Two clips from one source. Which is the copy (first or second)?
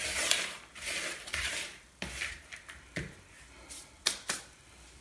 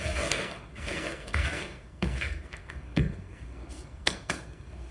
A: second